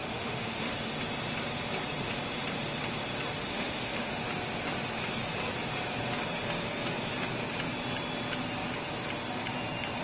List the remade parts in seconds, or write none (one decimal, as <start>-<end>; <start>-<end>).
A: 0.0-0.9; 3.4-4.1